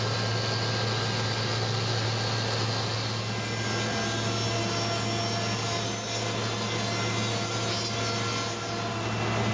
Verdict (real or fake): real